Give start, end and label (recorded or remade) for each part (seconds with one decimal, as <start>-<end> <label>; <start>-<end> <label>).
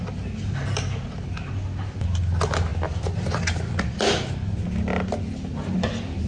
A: 0.0-6.3 recorded